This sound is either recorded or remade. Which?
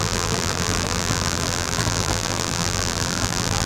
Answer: remade